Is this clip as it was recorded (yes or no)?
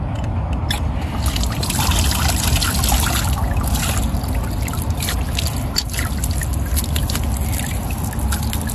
yes